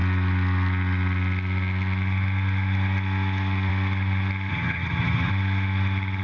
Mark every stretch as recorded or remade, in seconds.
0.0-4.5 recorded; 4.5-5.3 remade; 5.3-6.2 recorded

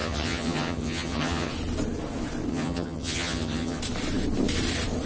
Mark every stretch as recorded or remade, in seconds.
0.0-1.5 remade; 1.5-2.5 recorded; 2.5-3.8 remade; 3.8-5.1 recorded

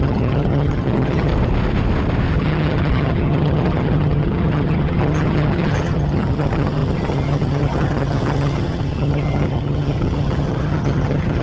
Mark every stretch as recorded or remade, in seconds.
0.0-1.3 remade; 1.3-2.3 recorded; 2.3-11.4 remade